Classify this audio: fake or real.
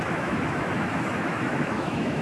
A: fake